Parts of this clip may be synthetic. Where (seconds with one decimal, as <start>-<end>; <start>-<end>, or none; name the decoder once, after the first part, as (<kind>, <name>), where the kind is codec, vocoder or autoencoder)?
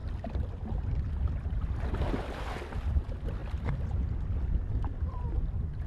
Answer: none